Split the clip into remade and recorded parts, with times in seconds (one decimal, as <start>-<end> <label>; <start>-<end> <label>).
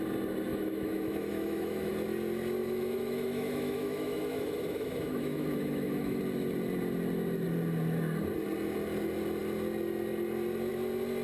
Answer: 0.0-0.5 recorded; 0.5-1.9 remade; 1.9-2.6 recorded; 2.6-6.2 remade; 6.2-11.2 recorded